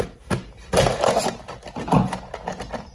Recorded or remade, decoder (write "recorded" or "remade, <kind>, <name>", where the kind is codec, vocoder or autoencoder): recorded